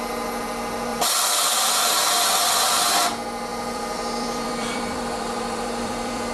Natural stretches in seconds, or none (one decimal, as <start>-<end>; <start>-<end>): 0.0-0.9; 2.9-3.5